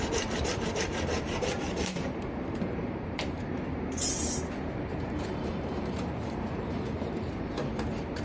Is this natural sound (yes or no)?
no